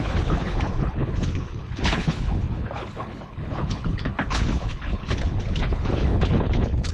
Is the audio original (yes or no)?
no